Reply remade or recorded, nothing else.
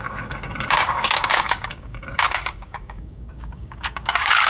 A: remade